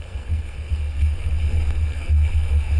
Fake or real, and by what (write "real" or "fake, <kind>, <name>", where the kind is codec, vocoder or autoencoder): fake, codec, SNAC